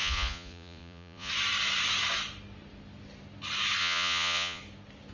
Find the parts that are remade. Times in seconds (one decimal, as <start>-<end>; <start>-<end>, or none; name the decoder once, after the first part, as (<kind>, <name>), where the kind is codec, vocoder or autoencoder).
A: 0.0-1.3 (vocoder, Vocos); 3.8-4.6